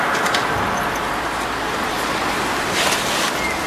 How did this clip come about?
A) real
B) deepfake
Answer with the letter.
A